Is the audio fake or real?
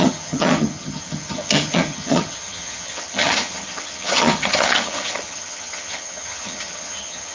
fake